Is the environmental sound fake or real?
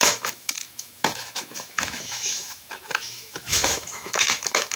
fake